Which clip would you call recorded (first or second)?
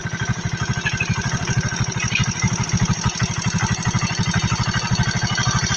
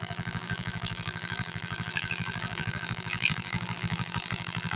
first